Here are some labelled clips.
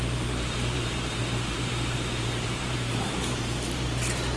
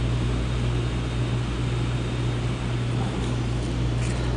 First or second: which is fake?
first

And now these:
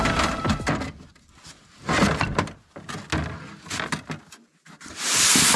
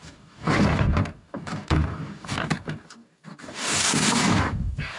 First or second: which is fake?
second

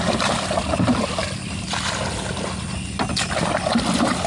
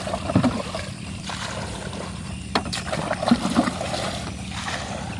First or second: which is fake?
second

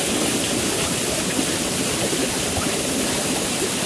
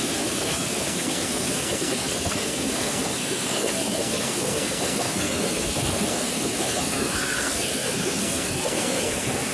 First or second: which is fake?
second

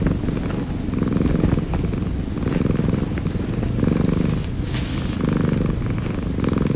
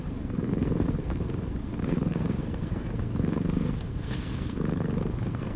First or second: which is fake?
second